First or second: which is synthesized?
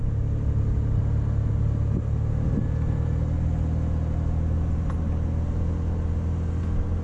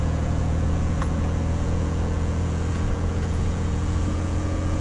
second